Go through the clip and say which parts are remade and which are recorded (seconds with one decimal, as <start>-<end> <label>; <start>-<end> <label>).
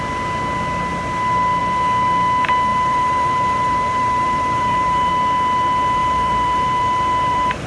0.0-2.7 recorded; 2.7-5.1 remade; 5.1-6.0 recorded; 6.0-7.7 remade